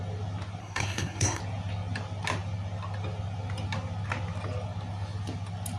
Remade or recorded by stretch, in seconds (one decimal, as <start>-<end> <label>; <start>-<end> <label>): 0.0-0.6 recorded; 0.6-1.4 remade; 1.4-5.8 recorded